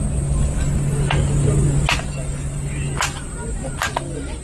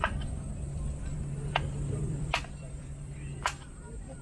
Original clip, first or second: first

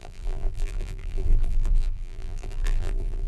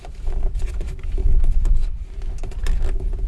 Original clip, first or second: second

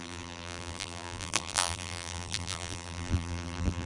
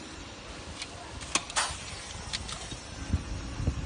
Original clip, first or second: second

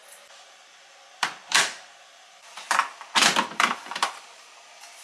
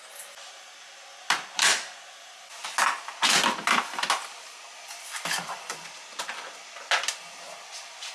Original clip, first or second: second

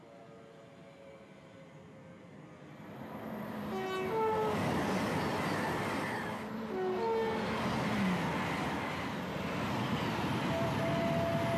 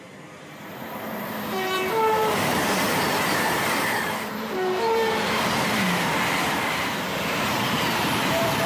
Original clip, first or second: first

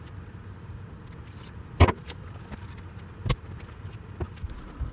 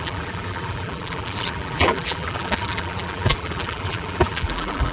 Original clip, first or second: first